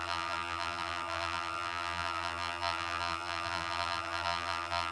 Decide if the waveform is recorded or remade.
remade